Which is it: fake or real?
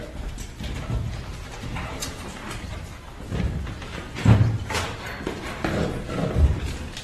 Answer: fake